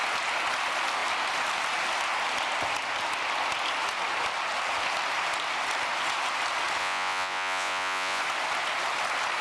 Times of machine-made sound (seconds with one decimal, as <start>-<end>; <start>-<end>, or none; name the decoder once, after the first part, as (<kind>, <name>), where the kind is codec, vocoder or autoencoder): 6.8-8.2 (vocoder, Vocos)